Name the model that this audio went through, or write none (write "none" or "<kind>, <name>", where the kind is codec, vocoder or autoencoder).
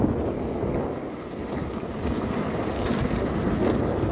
none